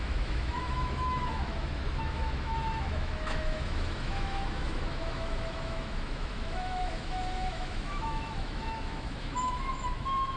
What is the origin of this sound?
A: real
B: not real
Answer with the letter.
B